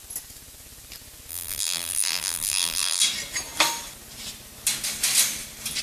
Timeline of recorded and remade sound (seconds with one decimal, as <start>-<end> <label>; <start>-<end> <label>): 0.0-1.3 recorded; 1.3-3.0 remade; 3.0-5.8 recorded